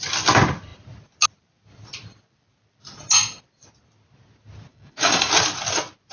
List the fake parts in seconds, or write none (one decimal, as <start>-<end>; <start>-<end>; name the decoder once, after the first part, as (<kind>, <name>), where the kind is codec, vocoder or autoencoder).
4.7-5.3 (codec, DAC)